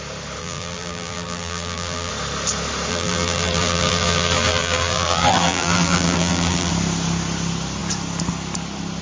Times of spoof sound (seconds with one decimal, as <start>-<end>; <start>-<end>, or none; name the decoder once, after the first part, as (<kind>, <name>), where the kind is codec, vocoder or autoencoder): 0.4-2.1 (vocoder, BigVGAN v2); 2.9-6.7